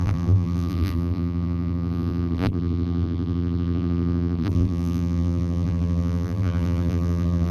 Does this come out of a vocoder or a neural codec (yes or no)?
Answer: yes